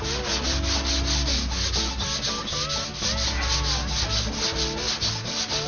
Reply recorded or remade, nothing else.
recorded